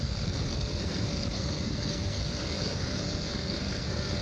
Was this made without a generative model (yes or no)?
no